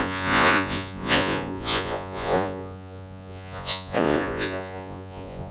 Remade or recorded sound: remade